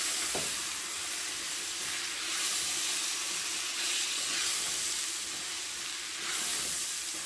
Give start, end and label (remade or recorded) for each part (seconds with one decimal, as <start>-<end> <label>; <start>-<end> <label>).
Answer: 0.0-3.7 recorded; 3.7-4.5 remade; 4.5-7.3 recorded